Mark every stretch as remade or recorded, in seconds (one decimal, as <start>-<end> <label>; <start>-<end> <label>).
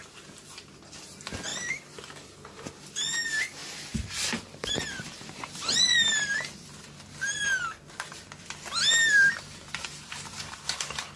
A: 0.0-1.5 recorded; 1.5-2.8 remade; 2.8-3.6 recorded; 3.6-7.4 remade; 7.4-11.2 recorded